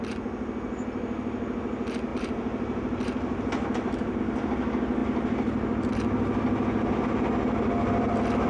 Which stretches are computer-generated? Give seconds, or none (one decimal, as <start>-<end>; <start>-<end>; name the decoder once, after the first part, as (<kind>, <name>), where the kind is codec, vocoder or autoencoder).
2.1-4.2 (vocoder, BigVGAN v2)